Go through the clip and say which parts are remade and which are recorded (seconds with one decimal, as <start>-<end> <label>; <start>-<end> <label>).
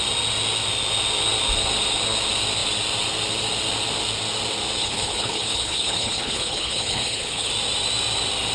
0.0-4.8 recorded; 4.8-7.5 remade; 7.5-8.5 recorded